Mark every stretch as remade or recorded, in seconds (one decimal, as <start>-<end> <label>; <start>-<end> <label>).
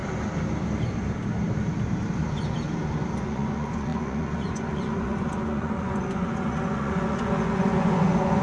0.0-3.2 recorded; 3.2-8.4 remade